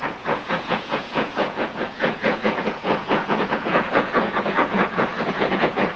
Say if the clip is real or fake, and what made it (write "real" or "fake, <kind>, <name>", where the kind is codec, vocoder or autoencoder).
fake, vocoder, Vocos